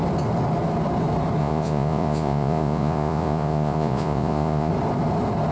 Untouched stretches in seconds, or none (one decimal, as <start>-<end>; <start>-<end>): 0.0-1.4; 4.7-5.5